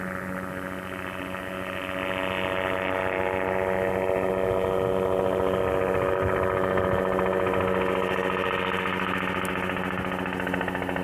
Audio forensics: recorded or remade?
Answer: recorded